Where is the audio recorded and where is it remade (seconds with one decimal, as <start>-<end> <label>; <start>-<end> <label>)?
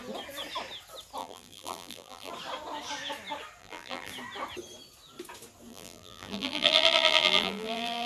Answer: 0.0-1.2 recorded; 1.2-2.3 remade; 2.3-3.6 recorded; 3.6-4.1 remade; 4.1-5.7 recorded; 5.7-8.1 remade